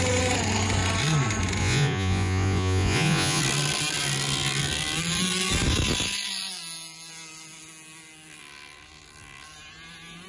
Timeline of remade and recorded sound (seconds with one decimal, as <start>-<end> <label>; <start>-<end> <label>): 0.0-1.6 recorded; 1.6-3.4 remade; 3.4-10.3 recorded

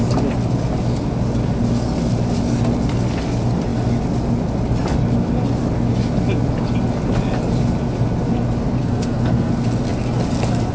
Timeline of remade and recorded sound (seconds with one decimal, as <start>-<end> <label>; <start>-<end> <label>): 0.0-8.8 recorded; 8.8-9.5 remade; 9.5-10.7 recorded

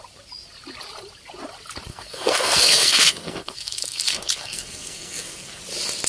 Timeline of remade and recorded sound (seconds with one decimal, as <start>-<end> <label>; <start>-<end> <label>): 0.0-1.9 recorded; 1.9-5.6 remade; 5.6-6.1 recorded

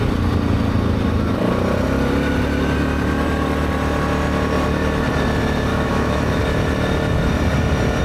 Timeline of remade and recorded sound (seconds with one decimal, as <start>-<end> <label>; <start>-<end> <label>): 0.0-5.7 recorded; 5.7-6.4 remade; 6.4-8.0 recorded

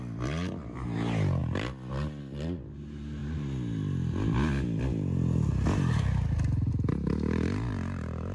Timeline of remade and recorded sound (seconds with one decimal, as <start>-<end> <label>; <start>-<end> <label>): 0.0-8.3 recorded

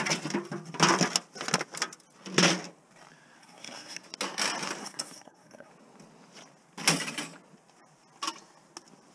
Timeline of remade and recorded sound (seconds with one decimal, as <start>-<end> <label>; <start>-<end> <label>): 0.0-3.4 recorded; 3.4-4.0 remade; 4.0-4.8 recorded; 4.8-5.7 remade; 5.7-9.1 recorded